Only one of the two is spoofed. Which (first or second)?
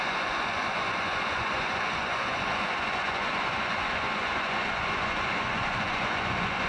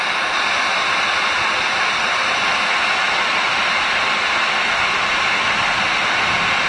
first